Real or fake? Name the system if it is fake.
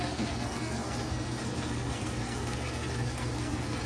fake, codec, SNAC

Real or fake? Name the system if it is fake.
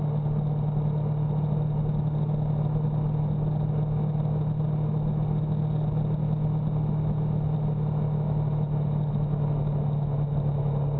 real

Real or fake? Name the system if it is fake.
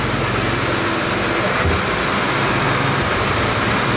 real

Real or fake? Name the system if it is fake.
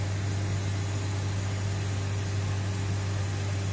real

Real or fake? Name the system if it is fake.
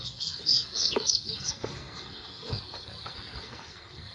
fake, codec, SNAC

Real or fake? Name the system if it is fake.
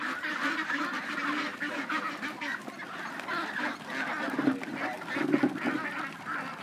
real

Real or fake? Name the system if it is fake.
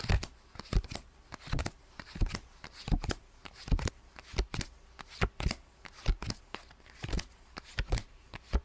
real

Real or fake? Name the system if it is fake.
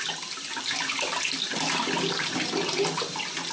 real